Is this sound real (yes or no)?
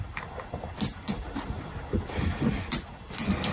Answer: yes